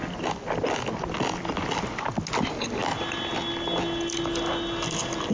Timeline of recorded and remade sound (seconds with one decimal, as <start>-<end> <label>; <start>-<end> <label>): 0.0-5.3 recorded